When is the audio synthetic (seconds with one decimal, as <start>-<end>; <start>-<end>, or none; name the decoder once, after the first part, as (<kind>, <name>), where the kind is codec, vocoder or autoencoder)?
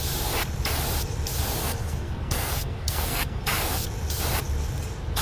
1.6-3.4 (codec, SNAC)